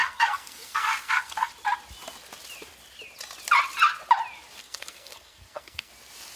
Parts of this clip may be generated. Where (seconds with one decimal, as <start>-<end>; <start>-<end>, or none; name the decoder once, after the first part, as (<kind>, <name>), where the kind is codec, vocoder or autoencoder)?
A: 0.0-1.5 (codec, SNAC); 4.6-5.9